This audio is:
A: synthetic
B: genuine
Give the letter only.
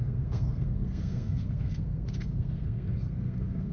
A